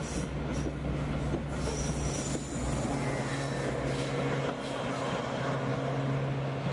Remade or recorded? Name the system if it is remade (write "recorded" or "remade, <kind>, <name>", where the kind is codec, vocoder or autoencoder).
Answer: recorded